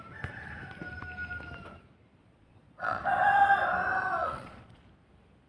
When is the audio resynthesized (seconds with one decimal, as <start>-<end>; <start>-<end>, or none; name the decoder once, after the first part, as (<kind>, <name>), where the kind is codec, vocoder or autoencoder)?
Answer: 2.2-3.0 (vocoder, Vocos); 4.2-4.8